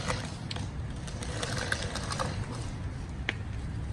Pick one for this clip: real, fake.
real